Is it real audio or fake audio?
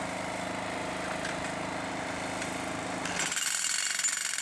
real